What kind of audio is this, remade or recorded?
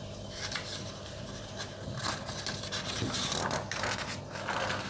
recorded